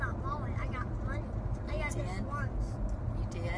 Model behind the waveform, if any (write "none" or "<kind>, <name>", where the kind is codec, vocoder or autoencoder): none